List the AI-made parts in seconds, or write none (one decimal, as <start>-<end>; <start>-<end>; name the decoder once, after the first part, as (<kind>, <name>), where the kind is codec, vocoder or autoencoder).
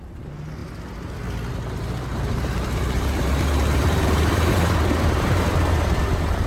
2.1-6.0 (vocoder, BigVGAN v2)